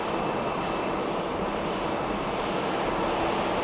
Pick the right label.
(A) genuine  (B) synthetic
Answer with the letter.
A